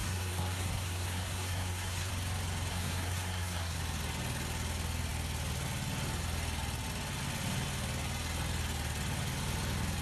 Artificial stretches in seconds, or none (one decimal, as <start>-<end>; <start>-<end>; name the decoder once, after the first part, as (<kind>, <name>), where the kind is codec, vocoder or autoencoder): 0.0-2.1 (codec, SNAC); 2.7-3.8